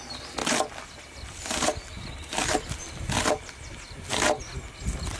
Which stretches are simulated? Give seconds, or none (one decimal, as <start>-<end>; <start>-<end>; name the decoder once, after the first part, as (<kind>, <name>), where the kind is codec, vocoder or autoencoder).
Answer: 0.4-2.8 (vocoder, BigVGAN v2)